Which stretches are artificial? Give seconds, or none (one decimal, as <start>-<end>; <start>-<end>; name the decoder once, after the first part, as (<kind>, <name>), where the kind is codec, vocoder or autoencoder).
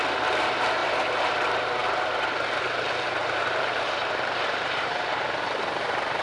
0.8-1.4 (vocoder, BigVGAN v2); 3.2-5.6